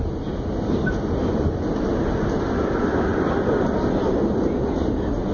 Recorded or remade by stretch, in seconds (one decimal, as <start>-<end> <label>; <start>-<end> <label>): 0.0-5.3 recorded